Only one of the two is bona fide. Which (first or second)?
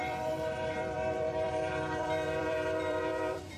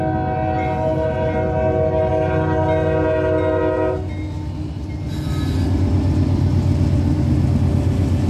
second